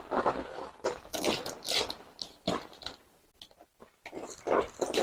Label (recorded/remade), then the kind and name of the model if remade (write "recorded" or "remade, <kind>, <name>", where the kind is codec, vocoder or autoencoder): recorded